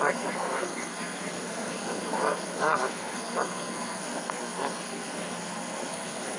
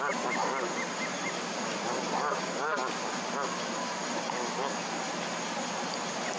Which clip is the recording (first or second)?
second